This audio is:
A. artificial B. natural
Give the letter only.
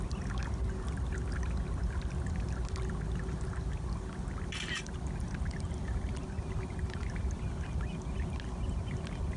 B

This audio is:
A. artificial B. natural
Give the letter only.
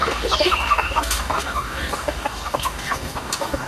A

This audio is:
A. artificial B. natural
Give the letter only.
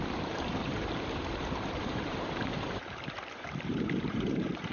A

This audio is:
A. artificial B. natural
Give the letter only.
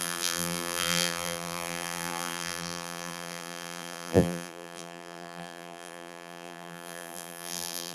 A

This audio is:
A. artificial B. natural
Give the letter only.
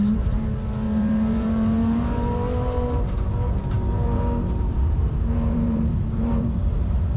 A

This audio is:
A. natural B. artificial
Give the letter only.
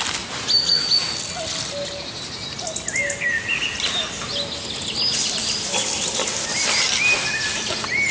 A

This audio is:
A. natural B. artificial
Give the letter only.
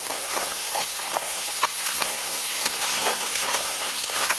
B